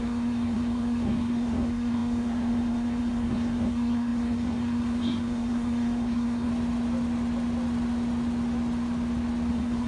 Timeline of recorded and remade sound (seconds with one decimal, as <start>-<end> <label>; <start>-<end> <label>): 0.0-6.5 remade; 6.5-9.5 recorded; 9.5-9.9 remade